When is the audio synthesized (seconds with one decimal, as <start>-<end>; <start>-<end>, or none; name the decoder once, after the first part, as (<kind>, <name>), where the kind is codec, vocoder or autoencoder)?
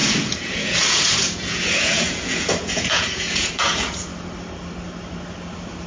0.0-4.1 (vocoder, Vocos)